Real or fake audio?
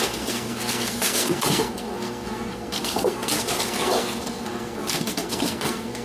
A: fake